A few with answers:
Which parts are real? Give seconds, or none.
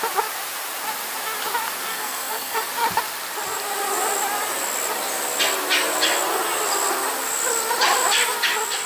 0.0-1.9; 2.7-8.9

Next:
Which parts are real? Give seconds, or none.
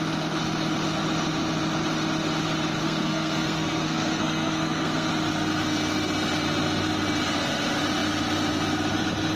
0.0-2.8; 5.1-9.4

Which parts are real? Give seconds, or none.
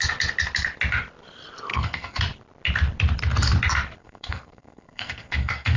0.0-1.7; 2.2-4.0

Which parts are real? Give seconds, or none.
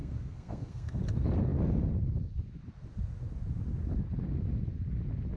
1.0-5.4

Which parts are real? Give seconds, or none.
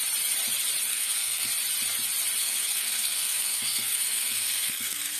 0.0-0.9; 1.5-2.4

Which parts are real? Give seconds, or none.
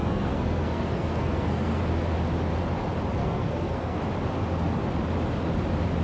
1.8-3.2; 4.0-6.0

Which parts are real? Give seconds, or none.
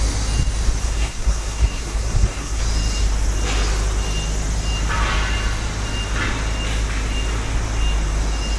0.0-0.8; 2.6-8.6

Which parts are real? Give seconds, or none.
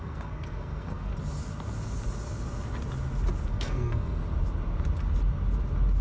1.1-3.5; 4.2-6.0